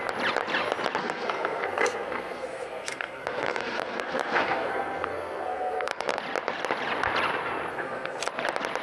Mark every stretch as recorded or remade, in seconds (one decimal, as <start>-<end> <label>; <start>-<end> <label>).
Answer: 0.0-1.0 recorded; 1.0-6.2 remade; 6.2-7.7 recorded; 7.7-8.2 remade; 8.2-8.8 recorded

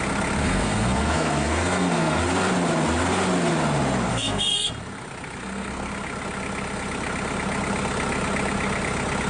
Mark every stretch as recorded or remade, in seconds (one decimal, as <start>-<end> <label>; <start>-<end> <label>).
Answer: 0.0-0.4 recorded; 0.4-2.2 remade; 2.2-4.1 recorded; 4.1-4.7 remade; 4.7-5.4 recorded; 5.4-5.9 remade; 5.9-9.3 recorded

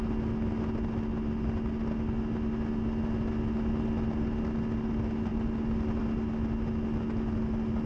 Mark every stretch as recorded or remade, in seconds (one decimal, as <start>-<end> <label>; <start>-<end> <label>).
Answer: 0.0-7.9 recorded

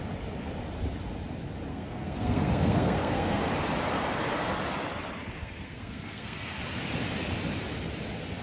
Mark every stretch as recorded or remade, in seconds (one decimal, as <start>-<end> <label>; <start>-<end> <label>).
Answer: 0.0-1.7 recorded; 1.7-3.4 remade; 3.4-5.4 recorded; 5.4-6.6 remade; 6.6-8.4 recorded

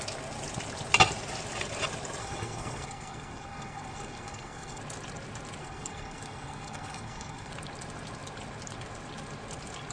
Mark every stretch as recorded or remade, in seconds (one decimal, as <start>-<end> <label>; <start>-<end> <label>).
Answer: 0.0-2.2 recorded; 2.2-4.8 remade; 4.8-5.6 recorded; 5.6-7.5 remade; 7.5-9.9 recorded